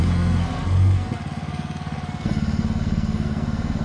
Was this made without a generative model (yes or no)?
no